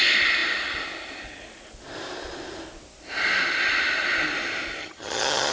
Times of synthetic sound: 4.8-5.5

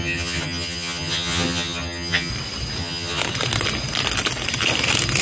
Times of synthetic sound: 0.0-2.3; 2.8-3.2

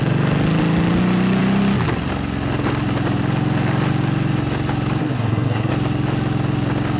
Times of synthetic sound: 5.0-5.7

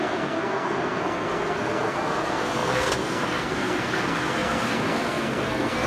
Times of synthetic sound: 0.0-5.9